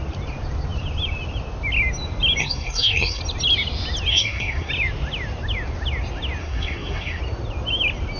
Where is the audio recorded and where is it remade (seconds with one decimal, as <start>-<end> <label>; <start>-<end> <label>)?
0.0-2.4 recorded; 2.4-3.2 remade; 3.2-4.1 recorded; 4.1-4.7 remade; 4.7-6.4 recorded; 6.4-7.2 remade; 7.2-8.2 recorded